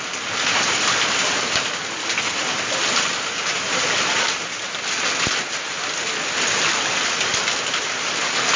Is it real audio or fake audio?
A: real